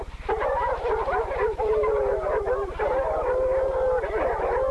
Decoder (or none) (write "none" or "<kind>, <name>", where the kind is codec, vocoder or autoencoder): none